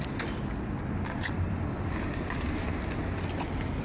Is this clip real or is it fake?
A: real